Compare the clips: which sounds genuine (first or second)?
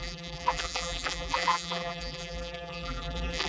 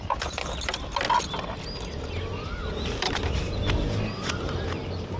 second